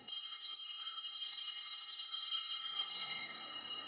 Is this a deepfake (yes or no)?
yes